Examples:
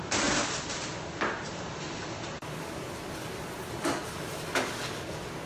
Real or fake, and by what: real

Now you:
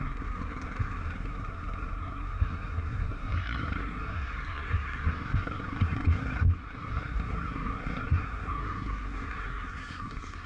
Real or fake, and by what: fake, codec, SNAC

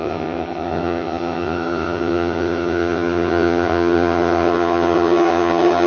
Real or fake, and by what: fake, vocoder, HiFi-GAN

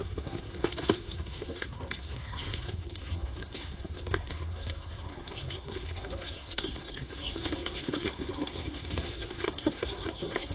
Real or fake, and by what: fake, codec, SNAC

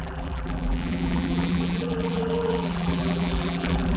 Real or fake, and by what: fake, vocoder, BigVGAN v2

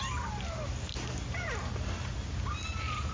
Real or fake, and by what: real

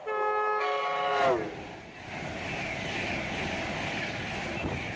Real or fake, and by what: real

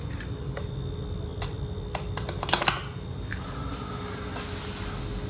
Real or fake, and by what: real